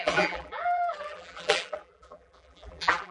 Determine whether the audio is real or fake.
fake